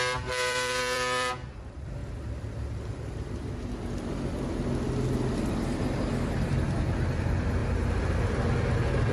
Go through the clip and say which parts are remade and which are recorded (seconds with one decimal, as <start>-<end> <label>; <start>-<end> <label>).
0.0-2.0 remade; 2.0-5.5 recorded; 5.5-7.6 remade; 7.6-9.1 recorded

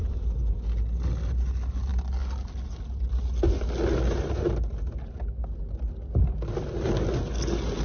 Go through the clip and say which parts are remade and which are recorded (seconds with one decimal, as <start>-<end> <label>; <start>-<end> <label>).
0.0-0.6 remade; 0.6-7.8 recorded

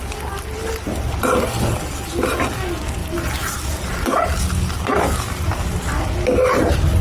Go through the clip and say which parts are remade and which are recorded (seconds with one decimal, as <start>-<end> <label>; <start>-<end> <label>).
0.0-7.0 recorded